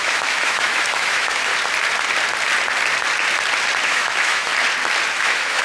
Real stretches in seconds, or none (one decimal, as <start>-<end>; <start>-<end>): 1.5-3.8; 4.5-5.1